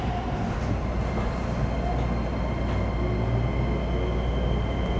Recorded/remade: recorded